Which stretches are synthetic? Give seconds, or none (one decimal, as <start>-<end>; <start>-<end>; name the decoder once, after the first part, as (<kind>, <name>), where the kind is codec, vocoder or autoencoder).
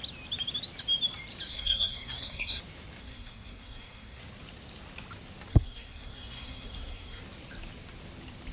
1.5-2.6 (codec, SNAC); 3.0-4.2; 5.5-7.2